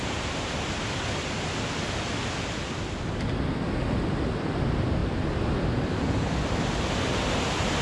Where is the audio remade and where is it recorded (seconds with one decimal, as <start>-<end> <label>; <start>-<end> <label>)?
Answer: 0.0-7.8 recorded